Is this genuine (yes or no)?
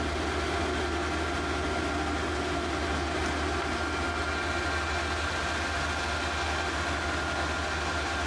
yes